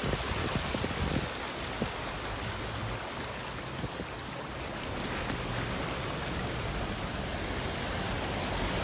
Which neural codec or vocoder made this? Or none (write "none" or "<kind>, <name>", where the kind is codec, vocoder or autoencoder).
none